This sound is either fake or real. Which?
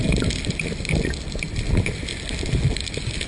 real